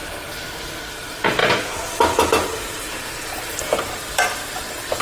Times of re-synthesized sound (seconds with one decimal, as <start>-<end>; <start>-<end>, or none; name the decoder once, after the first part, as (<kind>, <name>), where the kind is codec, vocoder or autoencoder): 0.9-1.4 (vocoder, BigVGAN v2); 3.3-5.0